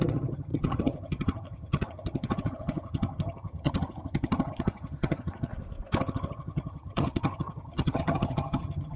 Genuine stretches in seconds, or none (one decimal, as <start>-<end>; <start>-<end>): 5.5-6.0